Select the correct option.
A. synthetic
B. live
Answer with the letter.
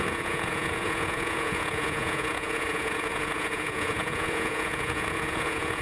A